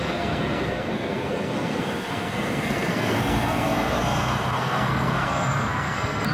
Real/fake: fake